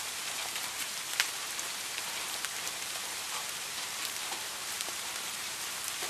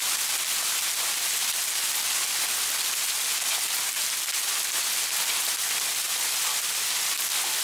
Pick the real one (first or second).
second